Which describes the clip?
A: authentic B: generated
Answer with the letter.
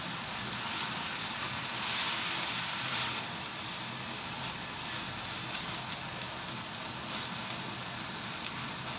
A